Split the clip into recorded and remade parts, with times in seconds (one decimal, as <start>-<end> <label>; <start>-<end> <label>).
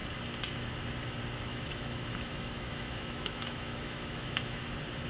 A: 0.0-1.5 recorded; 1.5-4.6 remade; 4.6-5.1 recorded